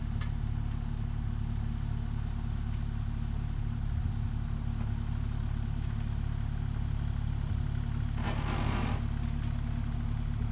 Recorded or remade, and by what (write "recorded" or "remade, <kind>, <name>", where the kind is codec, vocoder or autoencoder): recorded